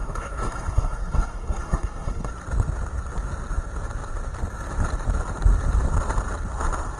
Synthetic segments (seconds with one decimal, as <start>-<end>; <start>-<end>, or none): 0.0-2.3